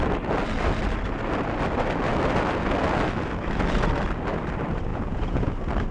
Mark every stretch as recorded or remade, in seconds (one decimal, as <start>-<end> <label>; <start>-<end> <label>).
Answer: 0.0-4.9 recorded; 4.9-5.5 remade; 5.5-5.9 recorded

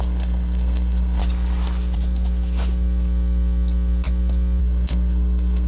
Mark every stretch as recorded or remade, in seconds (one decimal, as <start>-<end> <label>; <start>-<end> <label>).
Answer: 0.0-1.2 remade; 1.2-4.6 recorded; 4.6-5.7 remade

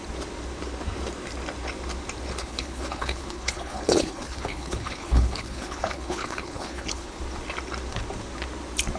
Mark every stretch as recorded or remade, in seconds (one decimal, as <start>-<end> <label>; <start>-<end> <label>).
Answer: 0.0-2.4 recorded; 2.4-7.2 remade; 7.2-9.0 recorded

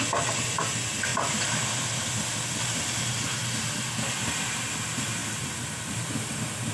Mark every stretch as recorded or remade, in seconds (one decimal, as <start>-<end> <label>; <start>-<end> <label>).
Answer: 0.0-6.7 recorded

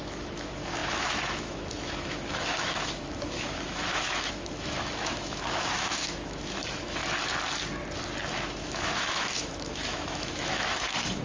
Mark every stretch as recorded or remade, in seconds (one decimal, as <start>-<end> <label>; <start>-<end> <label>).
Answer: 0.0-7.0 remade; 7.0-8.3 recorded; 8.3-11.2 remade

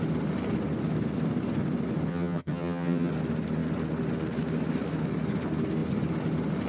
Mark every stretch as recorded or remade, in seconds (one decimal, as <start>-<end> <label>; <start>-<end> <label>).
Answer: 0.0-2.1 recorded; 2.1-3.1 remade; 3.1-6.7 recorded

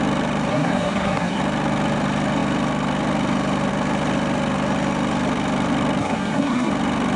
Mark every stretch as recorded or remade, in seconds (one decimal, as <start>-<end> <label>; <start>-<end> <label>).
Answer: 0.0-0.5 recorded; 0.5-1.4 remade; 1.4-6.0 recorded; 6.0-6.7 remade; 6.7-7.2 recorded

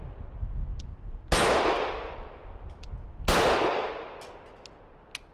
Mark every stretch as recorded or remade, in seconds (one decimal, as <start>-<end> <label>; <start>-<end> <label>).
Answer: 0.0-5.3 recorded